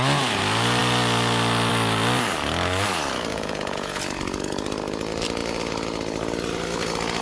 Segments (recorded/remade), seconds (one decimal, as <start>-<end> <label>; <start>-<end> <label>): 0.0-3.3 recorded; 3.3-4.0 remade; 4.0-7.2 recorded